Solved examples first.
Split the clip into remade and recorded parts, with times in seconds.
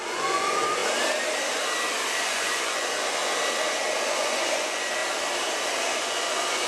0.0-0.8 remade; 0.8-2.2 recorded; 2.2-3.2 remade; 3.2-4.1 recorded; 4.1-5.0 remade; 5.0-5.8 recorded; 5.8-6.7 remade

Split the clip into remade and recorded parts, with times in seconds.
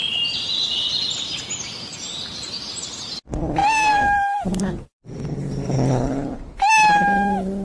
0.0-1.2 remade; 1.2-3.6 recorded; 3.6-6.7 remade; 6.7-7.6 recorded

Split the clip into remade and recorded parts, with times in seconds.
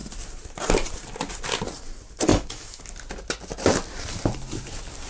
0.0-2.3 recorded; 2.3-2.8 remade; 2.8-5.1 recorded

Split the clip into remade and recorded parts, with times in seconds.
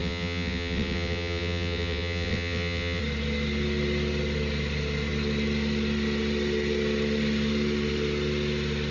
0.0-3.0 remade; 3.0-8.9 recorded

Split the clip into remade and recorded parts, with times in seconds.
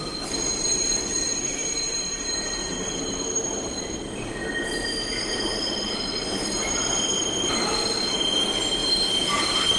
0.0-1.6 recorded; 1.6-2.5 remade; 2.5-9.8 recorded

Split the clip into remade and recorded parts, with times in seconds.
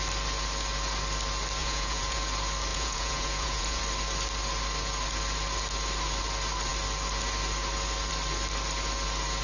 0.0-1.6 recorded; 1.6-2.2 remade; 2.2-2.7 recorded; 2.7-3.8 remade; 3.8-9.4 recorded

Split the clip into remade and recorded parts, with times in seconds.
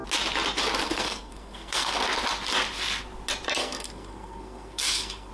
0.0-0.8 recorded; 0.8-2.0 remade; 2.0-3.6 recorded; 3.6-5.3 remade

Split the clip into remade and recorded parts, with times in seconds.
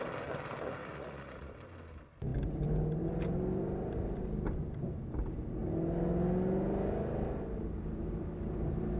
0.0-0.8 recorded; 0.8-1.5 remade; 1.5-9.0 recorded